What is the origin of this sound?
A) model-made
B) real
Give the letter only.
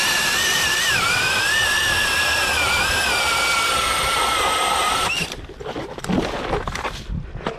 B